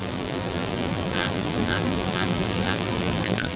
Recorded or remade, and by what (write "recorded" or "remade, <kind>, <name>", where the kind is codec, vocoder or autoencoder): remade, vocoder, BigVGAN v2